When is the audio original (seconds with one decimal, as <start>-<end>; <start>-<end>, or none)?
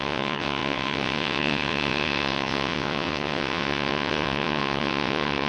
none